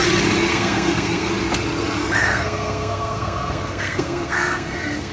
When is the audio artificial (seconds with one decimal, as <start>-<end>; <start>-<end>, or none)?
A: 0.5-1.3; 2.0-5.1